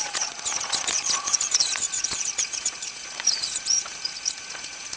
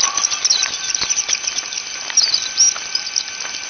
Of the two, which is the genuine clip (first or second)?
second